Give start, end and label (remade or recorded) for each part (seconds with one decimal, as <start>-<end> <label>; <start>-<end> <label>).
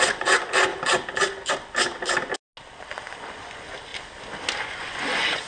0.0-0.7 remade; 0.7-3.2 recorded; 3.2-3.9 remade; 3.9-4.6 recorded; 4.6-5.5 remade